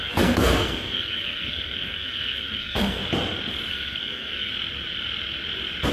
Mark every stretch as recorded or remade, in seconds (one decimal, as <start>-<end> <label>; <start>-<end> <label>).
0.0-3.0 remade; 3.0-3.7 recorded; 3.7-4.5 remade; 4.5-5.9 recorded